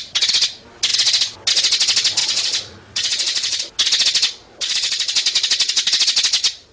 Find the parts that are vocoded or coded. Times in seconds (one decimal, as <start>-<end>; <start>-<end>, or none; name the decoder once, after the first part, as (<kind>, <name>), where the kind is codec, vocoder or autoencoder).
2.2-3.6 (vocoder, Vocos); 4.4-5.1